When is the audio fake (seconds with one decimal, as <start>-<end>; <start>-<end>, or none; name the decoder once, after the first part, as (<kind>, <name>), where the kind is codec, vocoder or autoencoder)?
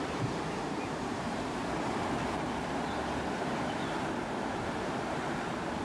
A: 0.0-1.6 (vocoder, BigVGAN v2); 4.5-5.8